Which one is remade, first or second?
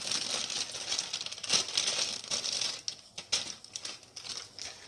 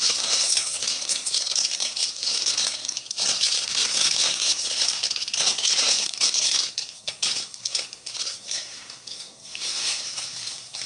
second